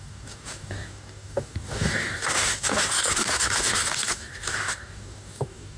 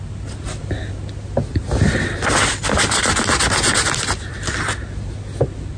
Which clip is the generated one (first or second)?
first